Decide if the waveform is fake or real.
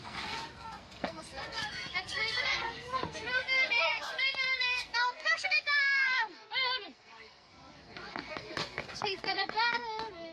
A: fake